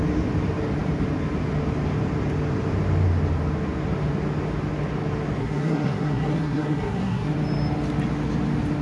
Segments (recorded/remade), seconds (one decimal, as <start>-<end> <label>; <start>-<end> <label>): 0.0-5.4 recorded; 5.4-7.3 remade; 7.3-8.8 recorded